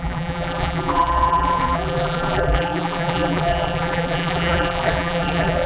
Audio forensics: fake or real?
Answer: fake